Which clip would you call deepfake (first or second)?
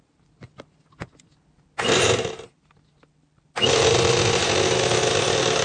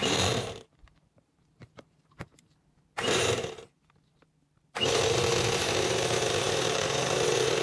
second